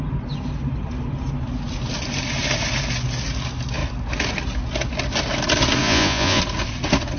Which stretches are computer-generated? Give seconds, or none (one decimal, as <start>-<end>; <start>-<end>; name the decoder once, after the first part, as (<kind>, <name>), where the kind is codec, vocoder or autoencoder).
5.8-6.4 (vocoder, Vocos)